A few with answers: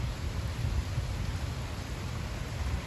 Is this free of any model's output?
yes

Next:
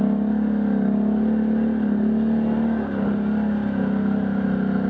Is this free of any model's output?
yes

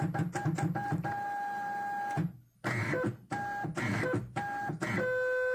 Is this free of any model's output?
yes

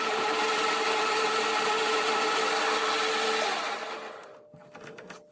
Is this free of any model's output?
yes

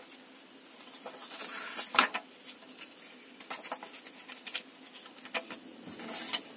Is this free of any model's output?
yes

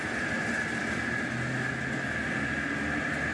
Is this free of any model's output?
yes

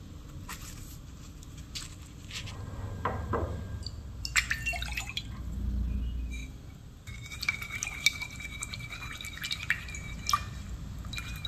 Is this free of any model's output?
yes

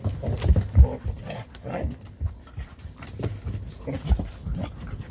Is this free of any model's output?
yes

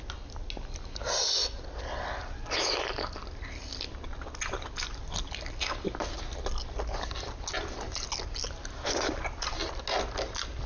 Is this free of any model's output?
yes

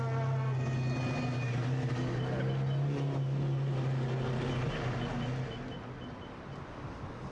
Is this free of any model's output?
yes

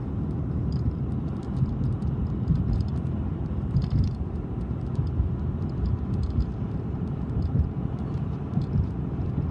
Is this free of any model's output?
no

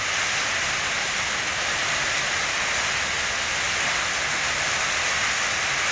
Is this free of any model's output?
yes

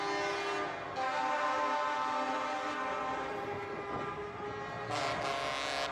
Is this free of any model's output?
yes